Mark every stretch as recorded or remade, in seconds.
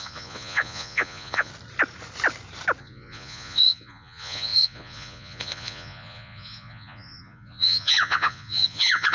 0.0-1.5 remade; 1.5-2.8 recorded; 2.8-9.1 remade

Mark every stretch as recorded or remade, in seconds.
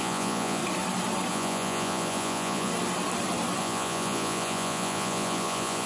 0.0-0.6 remade; 0.6-1.3 recorded; 1.3-2.7 remade; 2.7-3.6 recorded; 3.6-5.9 remade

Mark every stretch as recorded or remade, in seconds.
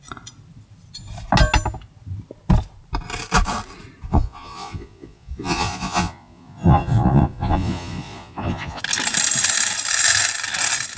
0.0-4.1 recorded; 4.1-8.8 remade; 8.8-11.0 recorded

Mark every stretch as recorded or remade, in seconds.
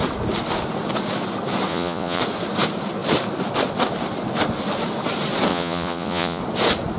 0.0-1.7 recorded; 1.7-2.2 remade; 2.2-5.5 recorded; 5.5-6.4 remade; 6.4-7.0 recorded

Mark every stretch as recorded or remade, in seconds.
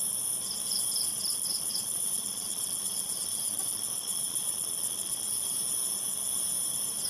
0.0-1.1 recorded; 1.1-5.4 remade; 5.4-7.1 recorded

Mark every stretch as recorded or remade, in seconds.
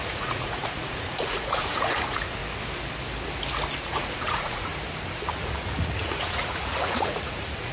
0.0-2.4 remade; 2.4-3.8 recorded; 3.8-4.7 remade; 4.7-5.3 recorded; 5.3-7.7 remade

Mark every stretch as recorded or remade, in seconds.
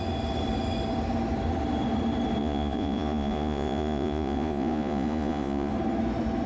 0.0-2.4 recorded; 2.4-5.7 remade; 5.7-6.5 recorded